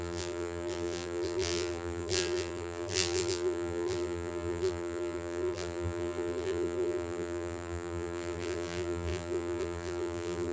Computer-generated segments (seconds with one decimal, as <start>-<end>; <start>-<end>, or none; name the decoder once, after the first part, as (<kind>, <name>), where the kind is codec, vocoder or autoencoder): 0.0-10.5 (vocoder, BigVGAN v2)